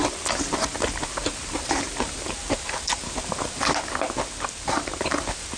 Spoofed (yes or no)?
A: no